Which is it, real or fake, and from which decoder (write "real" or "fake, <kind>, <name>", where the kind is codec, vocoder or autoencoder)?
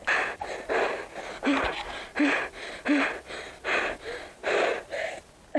real